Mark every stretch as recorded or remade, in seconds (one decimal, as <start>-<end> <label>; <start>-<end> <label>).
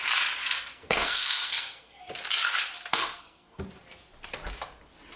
0.0-0.4 recorded; 0.4-2.0 remade; 2.0-2.9 recorded; 2.9-3.6 remade; 3.6-5.2 recorded